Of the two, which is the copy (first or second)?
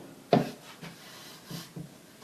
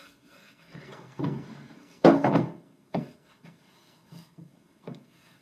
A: second